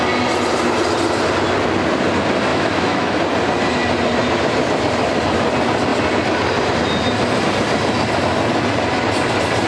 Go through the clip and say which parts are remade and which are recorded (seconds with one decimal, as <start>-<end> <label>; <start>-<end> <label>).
0.0-2.5 recorded; 2.5-3.2 remade; 3.2-9.7 recorded